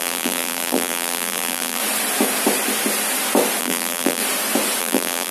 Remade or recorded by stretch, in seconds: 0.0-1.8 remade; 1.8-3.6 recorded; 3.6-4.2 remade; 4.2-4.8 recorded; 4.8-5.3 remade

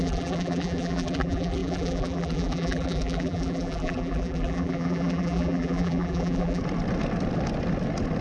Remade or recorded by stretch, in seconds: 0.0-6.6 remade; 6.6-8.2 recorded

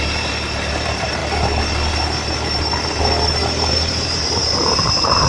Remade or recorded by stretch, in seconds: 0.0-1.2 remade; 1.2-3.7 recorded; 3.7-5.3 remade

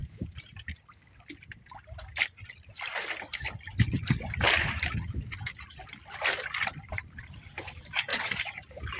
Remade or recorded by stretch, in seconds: 0.0-0.8 remade; 0.8-8.1 recorded; 8.1-9.0 remade

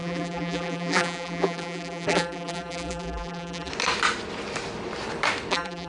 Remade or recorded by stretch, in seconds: 0.0-3.7 remade; 3.7-5.5 recorded; 5.5-5.9 remade

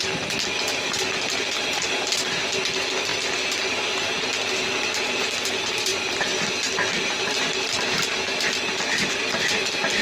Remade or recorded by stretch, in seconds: 0.0-5.9 recorded; 5.9-8.5 remade; 8.5-10.0 recorded